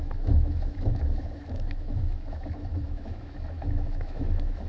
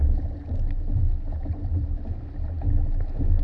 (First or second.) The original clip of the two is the second